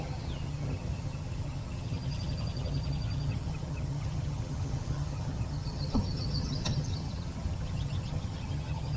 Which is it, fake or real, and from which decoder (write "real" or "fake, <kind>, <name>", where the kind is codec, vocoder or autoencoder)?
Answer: fake, vocoder, HiFi-GAN